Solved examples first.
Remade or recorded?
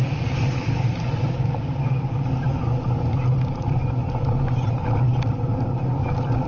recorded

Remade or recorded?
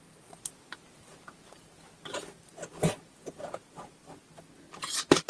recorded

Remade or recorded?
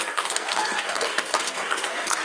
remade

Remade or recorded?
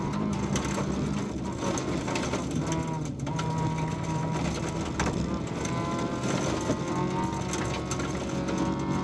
recorded